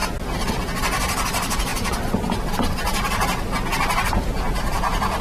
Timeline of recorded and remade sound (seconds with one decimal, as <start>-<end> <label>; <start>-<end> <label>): 0.0-5.2 recorded